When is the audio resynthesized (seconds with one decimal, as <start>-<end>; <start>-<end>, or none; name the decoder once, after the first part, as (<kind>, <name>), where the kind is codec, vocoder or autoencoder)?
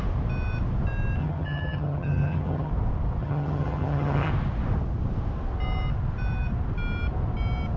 1.2-2.7 (vocoder, HiFi-GAN); 3.2-4.3